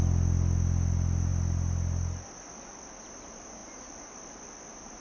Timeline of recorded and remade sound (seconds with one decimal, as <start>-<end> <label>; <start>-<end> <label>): 0.0-5.0 recorded